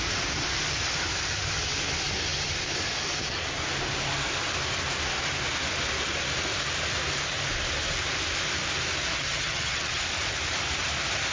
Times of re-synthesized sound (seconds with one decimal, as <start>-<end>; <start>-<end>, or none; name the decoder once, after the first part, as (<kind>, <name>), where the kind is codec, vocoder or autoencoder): 9.1-10.0 (vocoder, HiFi-GAN)